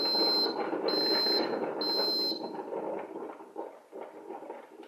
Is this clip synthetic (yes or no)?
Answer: no